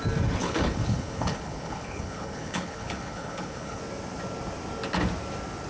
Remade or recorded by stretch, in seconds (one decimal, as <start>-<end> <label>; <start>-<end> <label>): 0.0-0.4 recorded; 0.4-3.8 remade; 3.8-5.7 recorded